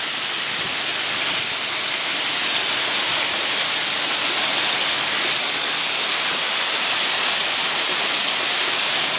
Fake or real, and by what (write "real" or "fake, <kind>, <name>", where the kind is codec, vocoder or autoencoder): real